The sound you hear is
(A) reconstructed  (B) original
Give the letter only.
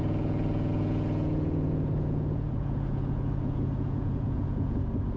A